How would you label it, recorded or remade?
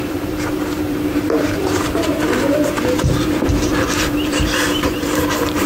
remade